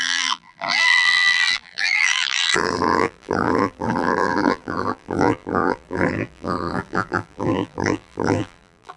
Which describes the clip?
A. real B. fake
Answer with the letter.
B